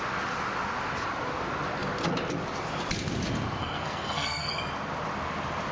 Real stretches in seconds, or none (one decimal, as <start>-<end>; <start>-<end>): 0.0-3.6; 4.6-5.7